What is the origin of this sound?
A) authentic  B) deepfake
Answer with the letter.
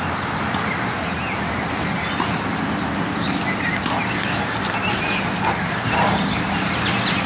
A